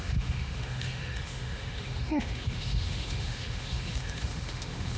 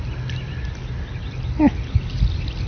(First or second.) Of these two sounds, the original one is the second